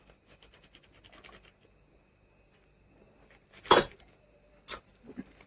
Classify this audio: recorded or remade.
recorded